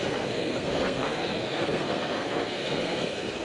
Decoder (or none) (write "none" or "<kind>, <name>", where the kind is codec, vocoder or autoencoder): codec, SNAC